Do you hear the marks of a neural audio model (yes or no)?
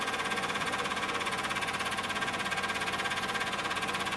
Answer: yes